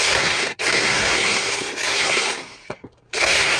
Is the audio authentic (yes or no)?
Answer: no